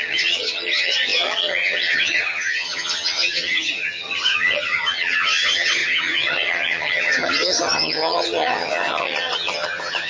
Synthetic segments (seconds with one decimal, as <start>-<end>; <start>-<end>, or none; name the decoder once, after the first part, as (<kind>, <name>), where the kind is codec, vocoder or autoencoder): 0.0-10.1 (vocoder, HiFi-GAN)